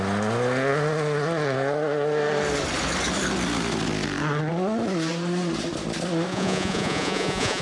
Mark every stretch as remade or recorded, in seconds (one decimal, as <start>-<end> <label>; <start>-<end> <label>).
0.0-6.3 recorded; 6.3-7.6 remade